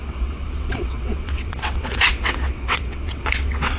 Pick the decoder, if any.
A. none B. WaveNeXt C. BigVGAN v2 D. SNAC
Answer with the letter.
B